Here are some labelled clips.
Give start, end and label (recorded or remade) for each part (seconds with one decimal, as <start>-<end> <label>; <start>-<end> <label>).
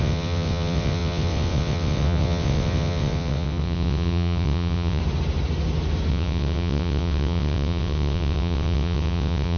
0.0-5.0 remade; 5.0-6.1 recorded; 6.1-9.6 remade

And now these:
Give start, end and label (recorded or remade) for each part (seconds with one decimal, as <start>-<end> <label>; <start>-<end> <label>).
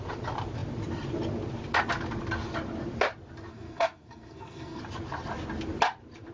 0.0-3.5 recorded; 3.5-4.8 remade; 4.8-6.3 recorded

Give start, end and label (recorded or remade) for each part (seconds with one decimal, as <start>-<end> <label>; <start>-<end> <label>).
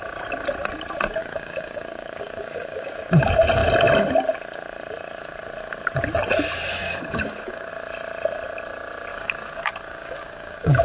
0.0-1.2 recorded; 1.2-2.9 remade; 2.9-6.7 recorded; 6.7-7.7 remade; 7.7-9.1 recorded; 9.1-10.8 remade